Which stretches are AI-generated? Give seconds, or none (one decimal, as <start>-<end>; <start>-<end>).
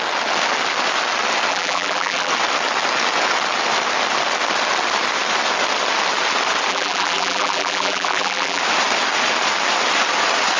1.5-2.3; 6.7-8.6